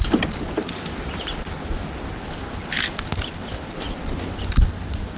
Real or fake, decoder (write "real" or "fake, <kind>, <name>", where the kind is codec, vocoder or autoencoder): real